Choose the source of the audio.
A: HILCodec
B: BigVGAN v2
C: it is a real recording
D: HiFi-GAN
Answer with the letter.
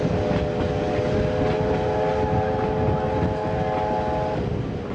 C